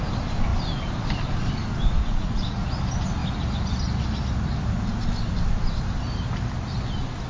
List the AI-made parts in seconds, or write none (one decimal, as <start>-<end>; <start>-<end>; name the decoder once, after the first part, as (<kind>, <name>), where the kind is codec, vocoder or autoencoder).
2.0-2.7 (vocoder, Vocos)